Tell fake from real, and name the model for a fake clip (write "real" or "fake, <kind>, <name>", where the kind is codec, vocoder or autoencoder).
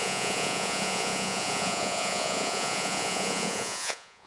fake, vocoder, Vocos